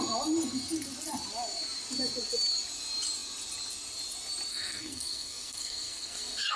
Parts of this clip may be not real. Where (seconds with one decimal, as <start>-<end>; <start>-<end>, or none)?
4.5-6.6